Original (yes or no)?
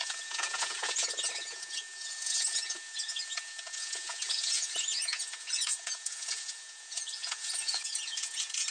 no